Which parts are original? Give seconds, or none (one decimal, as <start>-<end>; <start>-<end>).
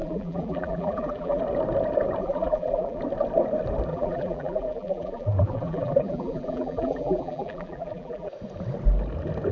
1.4-2.2; 3.0-3.9; 8.3-9.5